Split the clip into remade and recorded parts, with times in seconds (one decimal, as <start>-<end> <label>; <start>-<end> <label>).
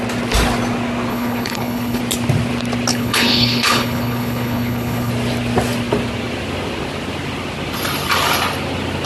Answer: 0.0-1.1 recorded; 1.1-2.0 remade; 2.0-2.9 recorded; 2.9-5.1 remade; 5.1-9.1 recorded